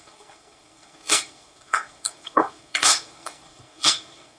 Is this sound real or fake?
fake